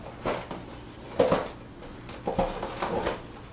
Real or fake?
real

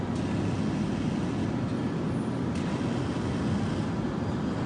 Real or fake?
real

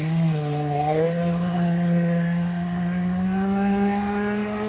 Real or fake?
fake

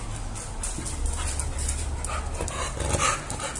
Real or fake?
real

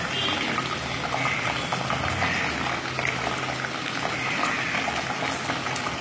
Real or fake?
real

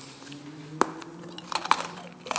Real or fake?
real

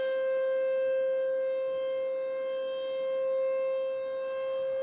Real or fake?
real